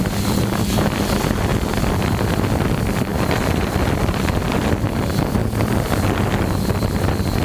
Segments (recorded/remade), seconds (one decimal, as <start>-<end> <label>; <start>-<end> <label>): 0.0-5.4 remade; 5.4-6.4 recorded; 6.4-7.4 remade